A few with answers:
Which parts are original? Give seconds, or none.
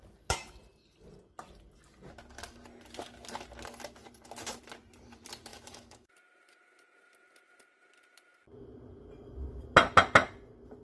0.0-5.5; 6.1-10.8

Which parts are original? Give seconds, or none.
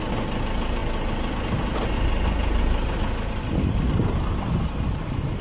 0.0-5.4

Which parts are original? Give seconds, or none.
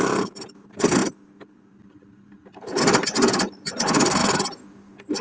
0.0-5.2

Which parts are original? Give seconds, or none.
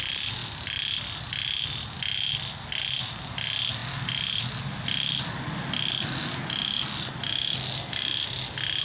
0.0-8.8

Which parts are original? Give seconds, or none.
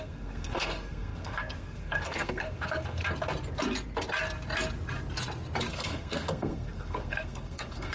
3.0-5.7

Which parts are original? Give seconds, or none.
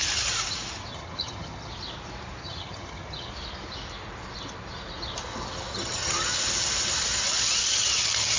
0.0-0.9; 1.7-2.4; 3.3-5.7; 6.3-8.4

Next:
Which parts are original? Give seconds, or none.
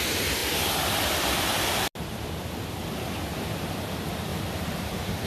0.0-4.3